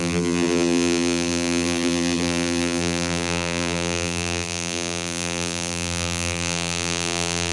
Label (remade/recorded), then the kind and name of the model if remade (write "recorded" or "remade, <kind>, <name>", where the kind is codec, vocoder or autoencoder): remade, vocoder, BigVGAN v2